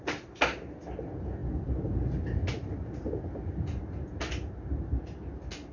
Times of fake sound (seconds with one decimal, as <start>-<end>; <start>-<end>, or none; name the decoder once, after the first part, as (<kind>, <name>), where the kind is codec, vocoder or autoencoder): none